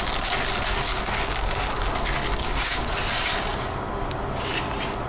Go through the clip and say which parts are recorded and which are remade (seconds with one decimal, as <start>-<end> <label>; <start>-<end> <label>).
0.0-0.9 recorded; 0.9-1.7 remade; 1.7-2.4 recorded; 2.4-2.9 remade; 2.9-5.1 recorded